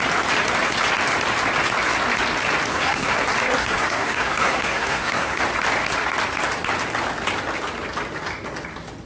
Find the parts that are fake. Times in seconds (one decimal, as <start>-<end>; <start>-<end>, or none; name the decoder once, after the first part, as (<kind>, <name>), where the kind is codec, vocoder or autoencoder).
2.7-3.2 (codec, SNAC); 3.6-5.4